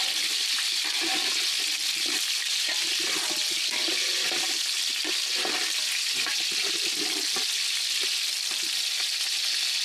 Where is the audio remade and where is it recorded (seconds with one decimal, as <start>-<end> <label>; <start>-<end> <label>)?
0.0-2.8 remade; 2.8-9.8 recorded